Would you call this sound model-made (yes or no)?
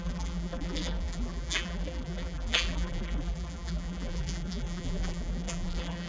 yes